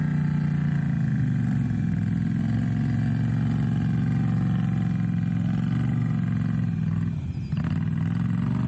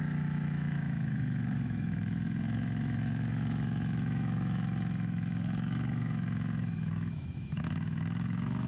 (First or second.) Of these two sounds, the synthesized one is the second